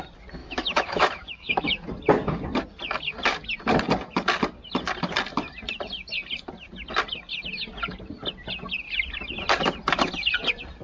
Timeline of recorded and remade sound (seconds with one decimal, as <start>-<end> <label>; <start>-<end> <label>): 0.0-0.4 recorded; 0.4-1.6 remade; 1.6-10.8 recorded